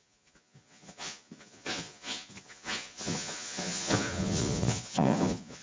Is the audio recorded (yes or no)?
no